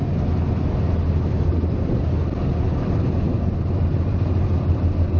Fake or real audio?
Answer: real